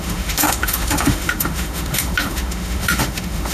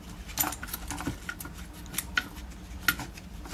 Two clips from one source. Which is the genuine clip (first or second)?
second